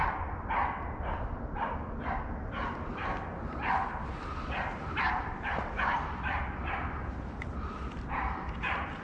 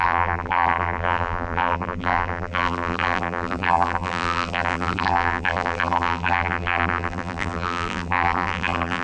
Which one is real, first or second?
first